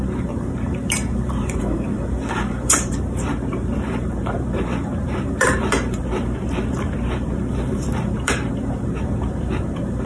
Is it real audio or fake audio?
fake